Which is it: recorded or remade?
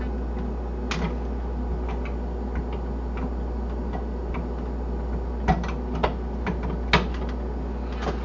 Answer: recorded